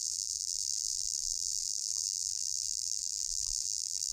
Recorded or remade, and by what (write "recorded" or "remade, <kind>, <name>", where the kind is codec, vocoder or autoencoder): remade, vocoder, BigVGAN v2